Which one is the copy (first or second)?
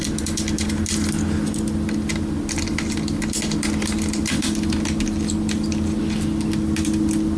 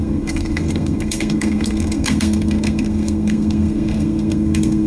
second